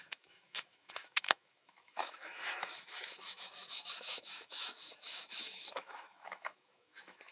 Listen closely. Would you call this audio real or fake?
fake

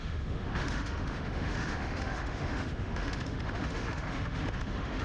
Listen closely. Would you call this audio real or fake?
fake